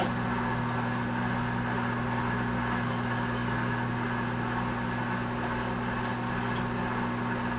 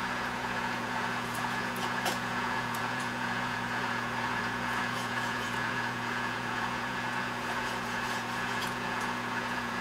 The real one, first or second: first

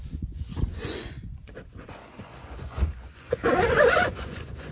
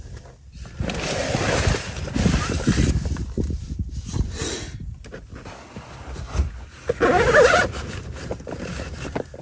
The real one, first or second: second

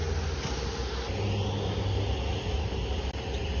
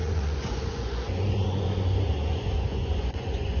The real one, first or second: first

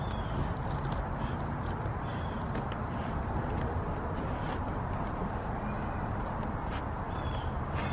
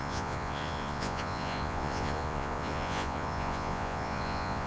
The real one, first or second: first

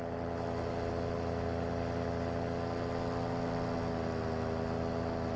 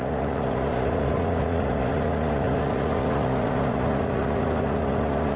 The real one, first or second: first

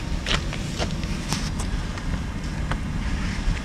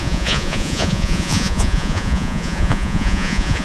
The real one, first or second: first